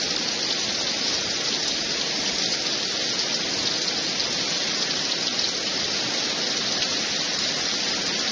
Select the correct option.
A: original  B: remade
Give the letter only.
A